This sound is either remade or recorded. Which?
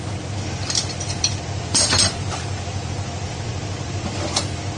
remade